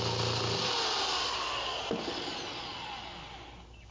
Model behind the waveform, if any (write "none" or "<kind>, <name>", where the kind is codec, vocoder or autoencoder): none